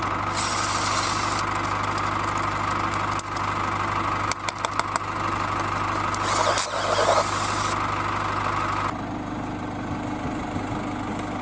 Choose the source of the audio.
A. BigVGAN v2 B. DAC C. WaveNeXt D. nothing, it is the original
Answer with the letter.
D